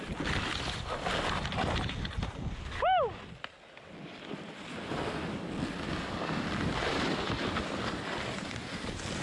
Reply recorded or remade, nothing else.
recorded